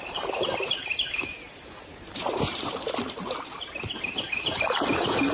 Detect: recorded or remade remade